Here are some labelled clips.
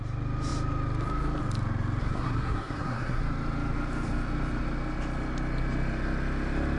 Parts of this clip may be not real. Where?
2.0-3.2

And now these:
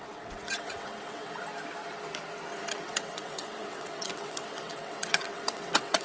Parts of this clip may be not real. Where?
0.0-1.5; 2.7-6.0

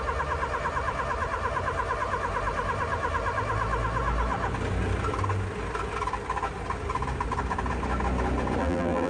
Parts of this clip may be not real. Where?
8.6-9.1